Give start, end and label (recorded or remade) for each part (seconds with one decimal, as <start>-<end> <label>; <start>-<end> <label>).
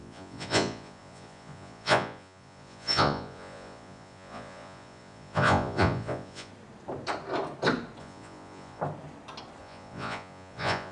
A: 0.0-6.5 remade; 6.5-8.0 recorded; 8.0-8.8 remade; 8.8-9.6 recorded; 9.6-10.9 remade